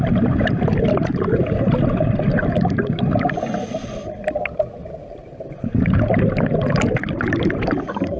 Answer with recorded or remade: recorded